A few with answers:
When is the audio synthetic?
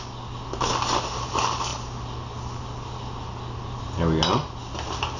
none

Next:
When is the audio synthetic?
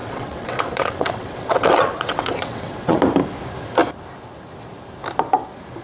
0.0-3.0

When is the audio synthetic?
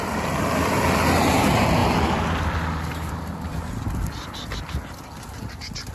none